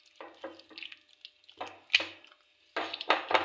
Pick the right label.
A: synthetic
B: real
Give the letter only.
B